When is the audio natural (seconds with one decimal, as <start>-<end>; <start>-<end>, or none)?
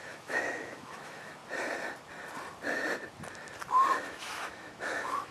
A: 1.4-4.0